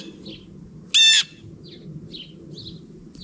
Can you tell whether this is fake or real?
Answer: real